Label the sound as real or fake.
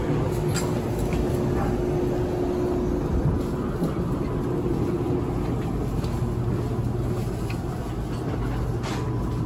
real